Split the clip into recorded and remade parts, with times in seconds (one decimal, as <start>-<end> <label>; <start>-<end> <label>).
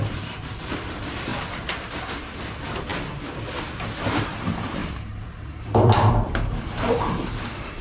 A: 0.0-2.9 remade; 2.9-4.3 recorded; 4.3-7.8 remade